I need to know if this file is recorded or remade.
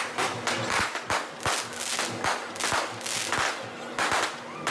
recorded